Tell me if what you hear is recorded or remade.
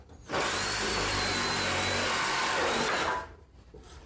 recorded